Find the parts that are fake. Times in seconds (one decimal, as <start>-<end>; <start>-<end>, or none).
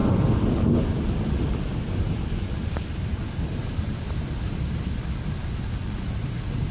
none